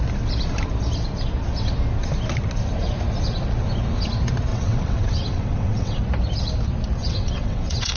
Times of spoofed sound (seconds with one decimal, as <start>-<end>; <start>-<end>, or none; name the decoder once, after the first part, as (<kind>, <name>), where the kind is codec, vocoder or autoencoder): 4.5-6.0 (vocoder, WaveNeXt); 7.0-8.0